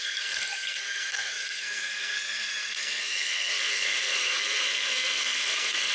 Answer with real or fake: fake